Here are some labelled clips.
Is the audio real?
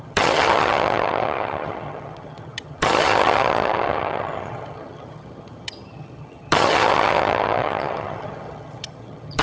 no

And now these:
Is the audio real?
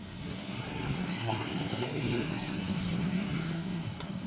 no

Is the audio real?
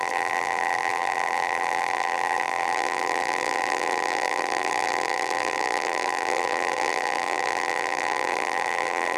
no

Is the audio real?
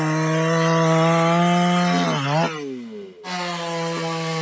yes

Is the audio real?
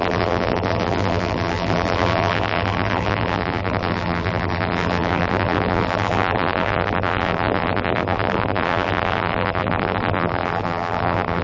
no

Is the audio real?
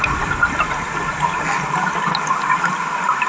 yes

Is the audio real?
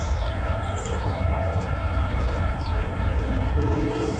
no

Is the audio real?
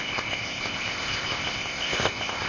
no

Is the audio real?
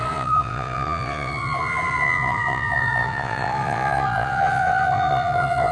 no